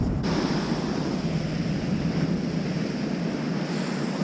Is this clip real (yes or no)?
yes